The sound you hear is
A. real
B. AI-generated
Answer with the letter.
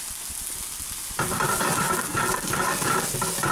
A